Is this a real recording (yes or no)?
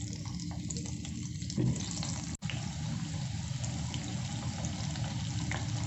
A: yes